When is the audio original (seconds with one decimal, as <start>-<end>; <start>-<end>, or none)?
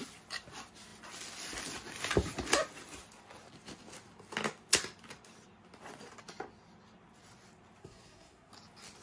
0.0-7.8; 8.5-9.0